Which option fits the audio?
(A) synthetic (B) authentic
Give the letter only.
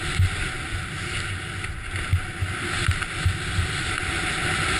B